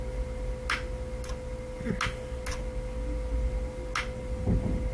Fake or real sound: real